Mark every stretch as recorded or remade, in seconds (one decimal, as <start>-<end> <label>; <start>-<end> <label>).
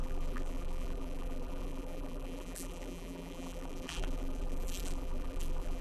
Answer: 0.0-5.8 remade